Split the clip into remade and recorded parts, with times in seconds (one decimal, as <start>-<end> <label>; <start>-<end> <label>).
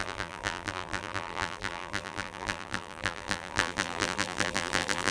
0.0-5.1 remade